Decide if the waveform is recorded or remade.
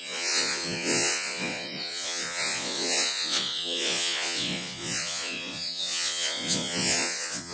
remade